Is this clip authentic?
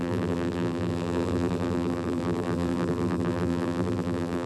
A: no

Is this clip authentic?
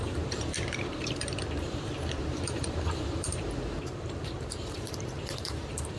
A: no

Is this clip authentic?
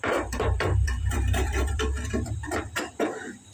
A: no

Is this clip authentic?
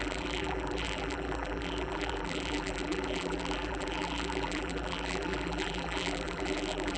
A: no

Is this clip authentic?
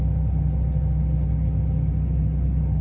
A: yes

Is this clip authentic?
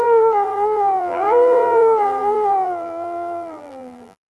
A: no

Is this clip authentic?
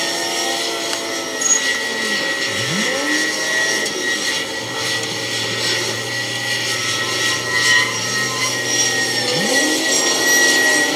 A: yes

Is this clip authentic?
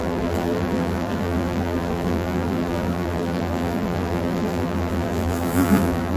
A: no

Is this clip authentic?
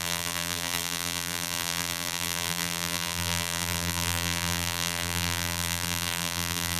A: no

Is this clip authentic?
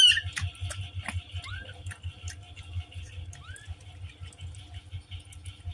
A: yes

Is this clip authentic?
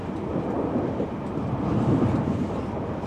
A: no